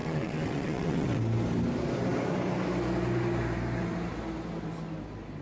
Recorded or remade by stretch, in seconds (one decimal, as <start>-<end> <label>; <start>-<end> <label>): 0.0-1.2 remade; 1.2-5.4 recorded